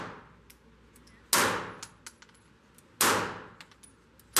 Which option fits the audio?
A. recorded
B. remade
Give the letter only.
A